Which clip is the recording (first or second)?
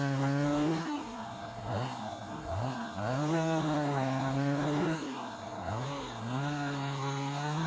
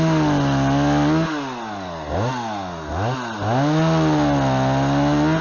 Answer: second